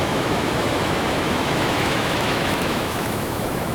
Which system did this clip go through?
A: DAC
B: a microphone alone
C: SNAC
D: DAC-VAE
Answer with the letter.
D